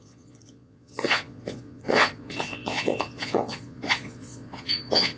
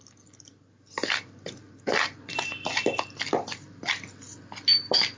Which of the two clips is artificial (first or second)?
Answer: first